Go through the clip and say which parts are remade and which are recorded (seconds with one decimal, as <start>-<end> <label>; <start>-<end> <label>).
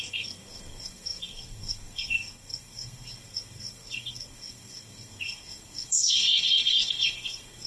0.0-7.7 remade